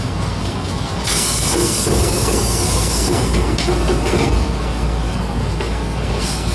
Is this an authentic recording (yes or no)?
no